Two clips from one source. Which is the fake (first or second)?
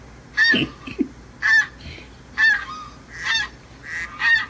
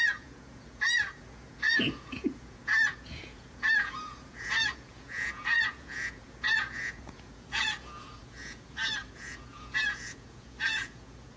second